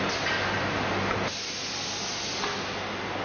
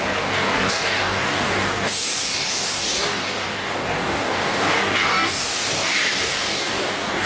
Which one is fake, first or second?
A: second